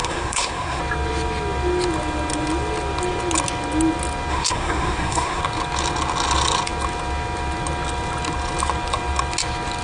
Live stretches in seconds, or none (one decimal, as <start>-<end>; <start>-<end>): 0.8-4.3; 5.4-9.8